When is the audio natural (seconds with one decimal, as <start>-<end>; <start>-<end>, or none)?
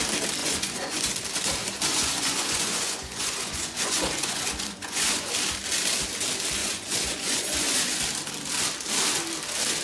0.0-0.4; 1.2-1.6; 5.3-6.6; 8.0-9.8